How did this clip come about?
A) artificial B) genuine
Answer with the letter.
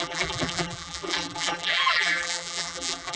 A